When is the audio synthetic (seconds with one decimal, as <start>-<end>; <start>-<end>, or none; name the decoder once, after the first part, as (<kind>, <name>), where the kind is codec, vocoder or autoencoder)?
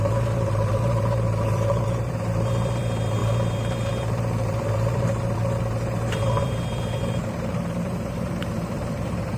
0.0-9.4 (vocoder, BigVGAN v2)